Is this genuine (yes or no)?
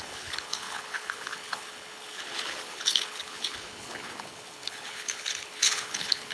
no